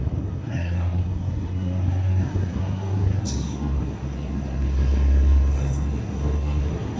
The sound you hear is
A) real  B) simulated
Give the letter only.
B